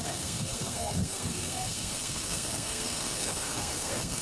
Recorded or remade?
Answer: remade